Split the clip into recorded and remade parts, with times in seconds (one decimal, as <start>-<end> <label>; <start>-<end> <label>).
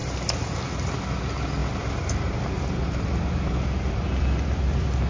0.0-0.5 remade; 0.5-1.6 recorded; 1.6-5.1 remade